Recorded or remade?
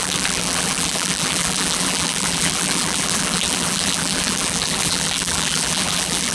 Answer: remade